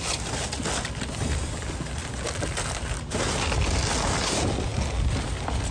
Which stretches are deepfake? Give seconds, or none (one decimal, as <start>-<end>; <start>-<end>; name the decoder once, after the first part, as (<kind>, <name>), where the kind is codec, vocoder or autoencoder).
none